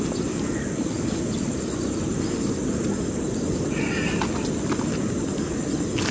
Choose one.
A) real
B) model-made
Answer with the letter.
A